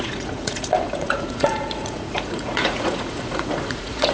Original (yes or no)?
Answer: no